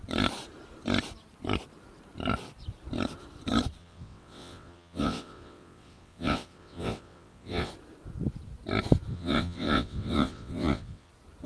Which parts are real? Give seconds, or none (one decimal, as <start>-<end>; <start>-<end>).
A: 0.0-3.8; 7.7-9.1; 11.1-11.5